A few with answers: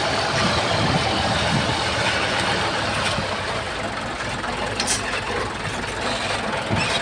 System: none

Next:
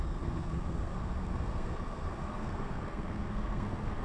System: codec, SNAC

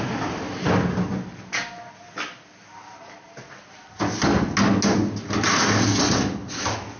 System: none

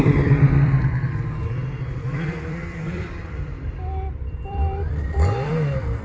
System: vocoder, BigVGAN v2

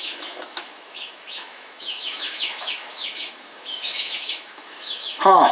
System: autoencoder, DAC-VAE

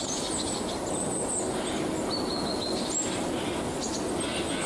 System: none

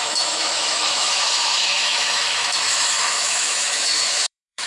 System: autoencoder, DAC-VAE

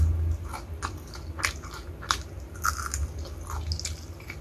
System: none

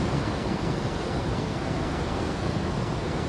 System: codec, SNAC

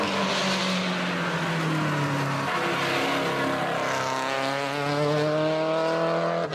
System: none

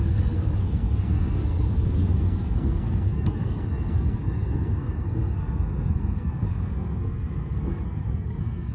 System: codec, SNAC